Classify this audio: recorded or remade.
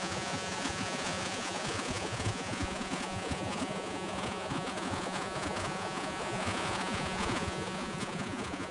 remade